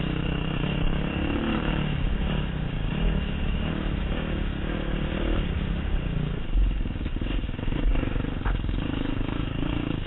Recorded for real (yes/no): no